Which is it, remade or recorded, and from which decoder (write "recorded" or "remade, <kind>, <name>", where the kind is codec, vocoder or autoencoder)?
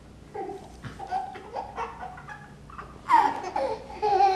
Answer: recorded